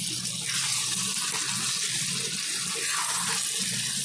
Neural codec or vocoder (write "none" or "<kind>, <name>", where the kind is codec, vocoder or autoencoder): none